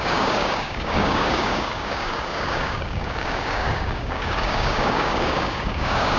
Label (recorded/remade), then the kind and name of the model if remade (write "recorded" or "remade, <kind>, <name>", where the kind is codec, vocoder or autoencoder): remade, codec, DAC